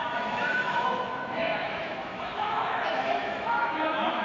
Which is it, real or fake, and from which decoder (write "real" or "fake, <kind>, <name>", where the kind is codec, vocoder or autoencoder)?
fake, autoencoder, DAC-VAE